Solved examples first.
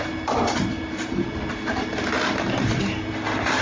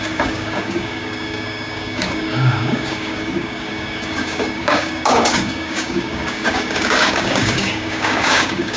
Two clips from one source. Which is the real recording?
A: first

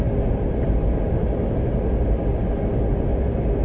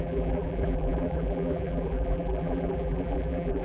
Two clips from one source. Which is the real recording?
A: first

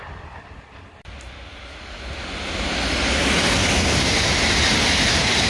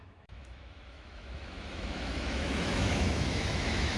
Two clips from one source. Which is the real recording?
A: first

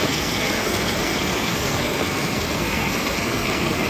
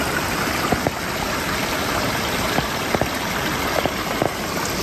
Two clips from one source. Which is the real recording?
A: second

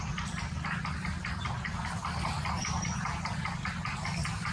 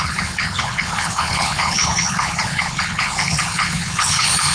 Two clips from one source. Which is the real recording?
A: first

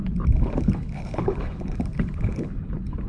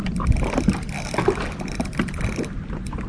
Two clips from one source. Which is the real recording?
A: second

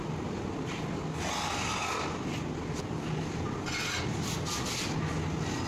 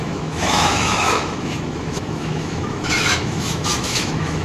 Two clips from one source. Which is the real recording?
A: first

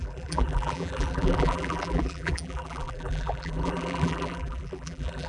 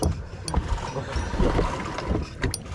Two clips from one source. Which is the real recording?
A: second